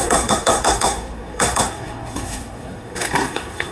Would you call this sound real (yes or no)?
no